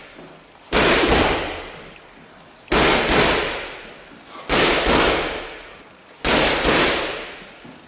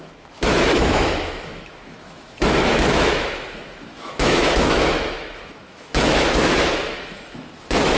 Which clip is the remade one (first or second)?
second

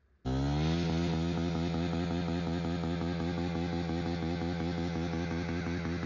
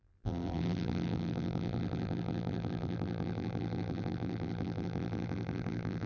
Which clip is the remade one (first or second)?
second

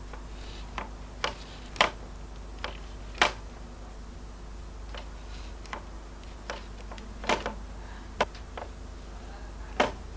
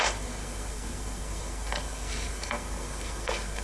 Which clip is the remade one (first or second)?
second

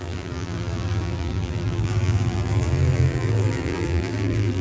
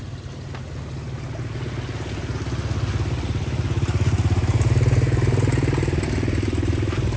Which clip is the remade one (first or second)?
first